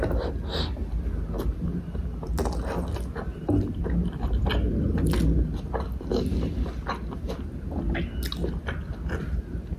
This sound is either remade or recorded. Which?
recorded